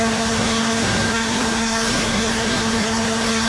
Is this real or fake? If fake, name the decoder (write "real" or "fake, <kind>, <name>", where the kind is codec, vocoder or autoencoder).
fake, codec, SNAC